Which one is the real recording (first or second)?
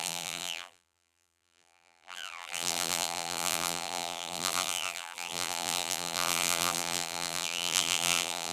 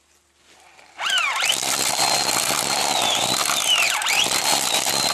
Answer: second